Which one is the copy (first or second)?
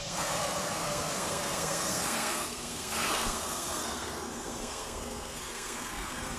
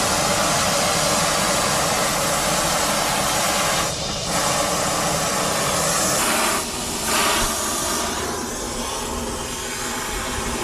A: first